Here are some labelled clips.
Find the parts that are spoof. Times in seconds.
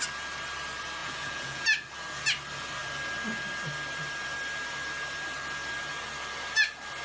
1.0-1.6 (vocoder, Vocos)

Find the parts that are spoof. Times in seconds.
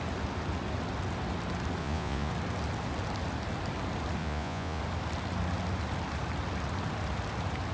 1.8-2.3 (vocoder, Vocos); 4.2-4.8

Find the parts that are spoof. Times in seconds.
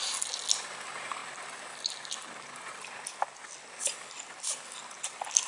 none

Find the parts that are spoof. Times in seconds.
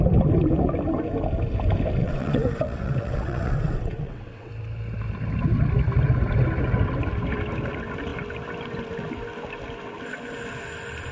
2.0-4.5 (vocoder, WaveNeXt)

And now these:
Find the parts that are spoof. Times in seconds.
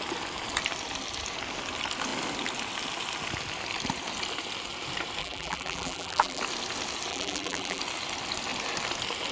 5.2-6.4 (vocoder, BigVGAN v2); 7.1-7.8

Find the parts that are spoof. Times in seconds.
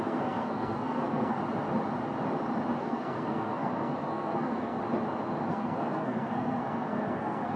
0.0-1.4 (codec, SNAC); 2.8-4.8; 5.5-7.6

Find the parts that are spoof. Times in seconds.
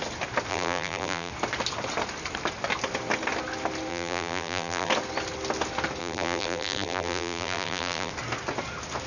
0.5-1.3 (vocoder, BigVGAN v2); 3.9-4.9; 6.0-8.1